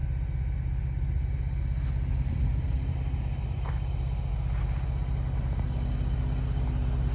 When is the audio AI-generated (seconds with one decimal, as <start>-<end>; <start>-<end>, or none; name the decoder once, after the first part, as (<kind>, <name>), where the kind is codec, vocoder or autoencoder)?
none